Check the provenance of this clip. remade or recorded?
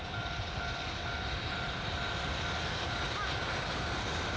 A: recorded